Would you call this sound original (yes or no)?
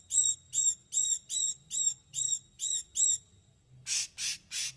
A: yes